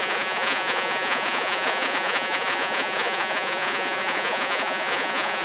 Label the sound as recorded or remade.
remade